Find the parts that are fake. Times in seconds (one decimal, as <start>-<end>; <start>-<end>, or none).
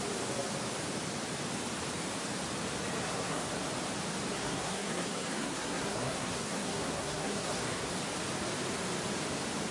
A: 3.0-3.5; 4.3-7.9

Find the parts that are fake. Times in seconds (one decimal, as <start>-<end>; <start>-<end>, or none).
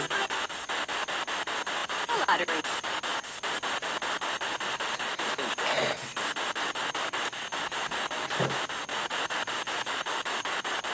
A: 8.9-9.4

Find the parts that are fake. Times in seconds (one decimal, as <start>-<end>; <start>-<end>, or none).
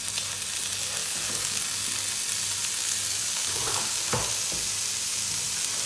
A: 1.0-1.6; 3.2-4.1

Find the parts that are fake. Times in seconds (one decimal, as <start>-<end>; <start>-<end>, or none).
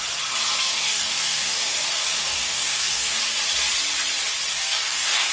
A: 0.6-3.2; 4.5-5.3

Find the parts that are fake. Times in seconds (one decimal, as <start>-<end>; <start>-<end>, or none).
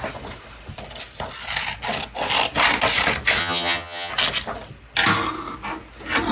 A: 3.4-4.1